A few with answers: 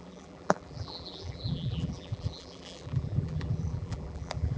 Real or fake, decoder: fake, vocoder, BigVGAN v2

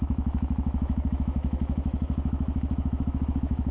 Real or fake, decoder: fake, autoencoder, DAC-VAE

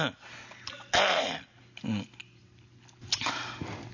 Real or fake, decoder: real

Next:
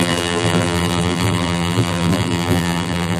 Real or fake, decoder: fake, vocoder, BigVGAN v2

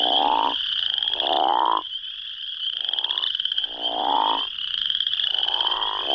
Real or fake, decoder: real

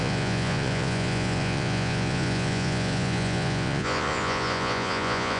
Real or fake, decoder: fake, vocoder, Vocos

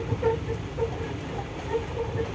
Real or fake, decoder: real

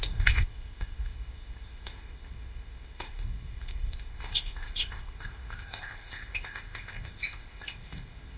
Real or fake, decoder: fake, codec, ZipCodec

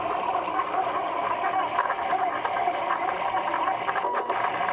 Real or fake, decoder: real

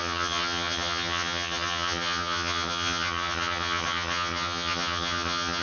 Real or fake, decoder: fake, vocoder, HiFi-GAN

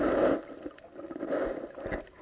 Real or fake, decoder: real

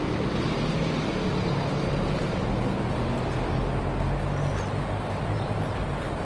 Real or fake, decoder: real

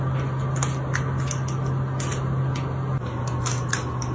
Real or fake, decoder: real